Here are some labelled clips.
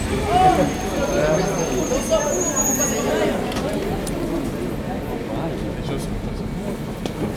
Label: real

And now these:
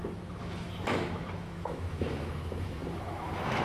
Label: fake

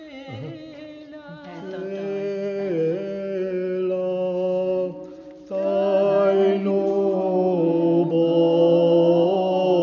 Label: real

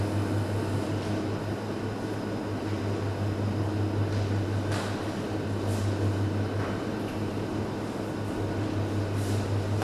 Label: real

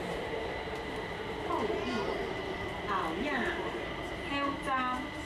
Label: real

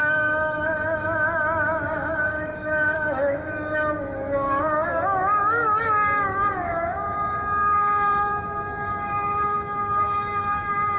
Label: fake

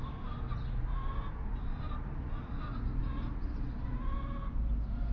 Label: real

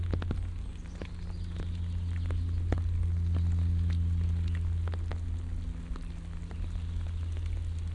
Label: real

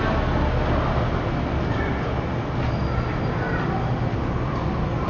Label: real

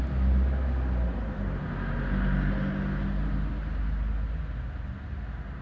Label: real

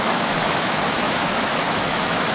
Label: fake